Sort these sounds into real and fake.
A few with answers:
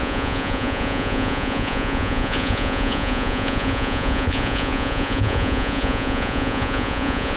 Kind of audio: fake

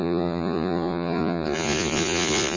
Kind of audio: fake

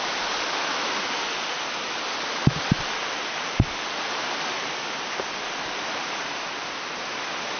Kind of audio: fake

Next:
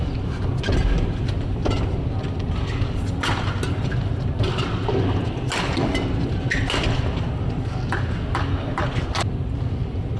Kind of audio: real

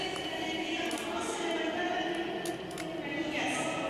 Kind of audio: real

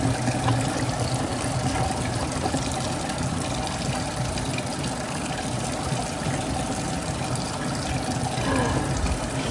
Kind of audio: real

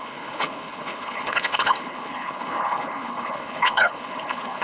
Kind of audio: fake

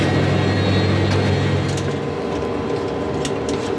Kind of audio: real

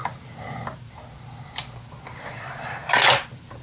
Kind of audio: real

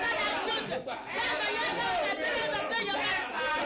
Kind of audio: real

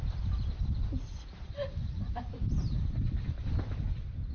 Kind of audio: fake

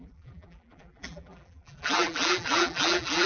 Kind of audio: fake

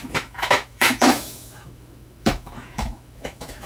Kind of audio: fake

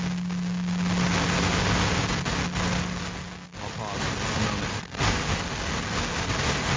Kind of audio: real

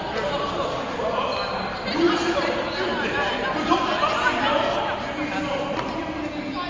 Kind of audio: real